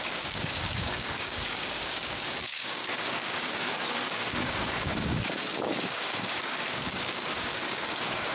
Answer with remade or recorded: remade